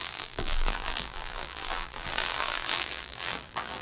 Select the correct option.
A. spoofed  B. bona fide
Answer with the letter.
A